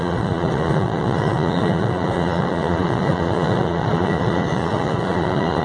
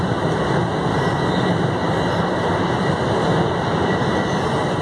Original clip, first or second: second